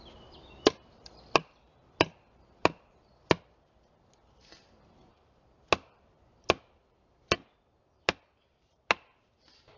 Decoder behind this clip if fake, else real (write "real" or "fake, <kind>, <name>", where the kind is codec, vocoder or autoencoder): real